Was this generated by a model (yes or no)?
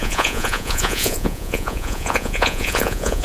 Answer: yes